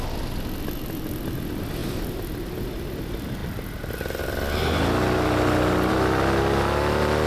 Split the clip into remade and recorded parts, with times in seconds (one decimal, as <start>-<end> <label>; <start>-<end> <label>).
0.0-7.3 recorded